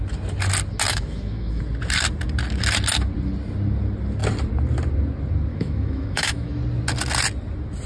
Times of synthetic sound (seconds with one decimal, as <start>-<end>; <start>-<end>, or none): 0.9-1.6; 5.5-6.6